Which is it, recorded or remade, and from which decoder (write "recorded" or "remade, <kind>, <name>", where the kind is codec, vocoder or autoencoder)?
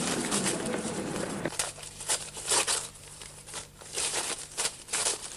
remade, vocoder, BigVGAN v2